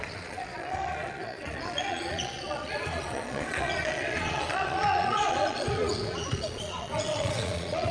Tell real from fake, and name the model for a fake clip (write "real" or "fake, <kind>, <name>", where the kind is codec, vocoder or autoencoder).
fake, vocoder, Vocos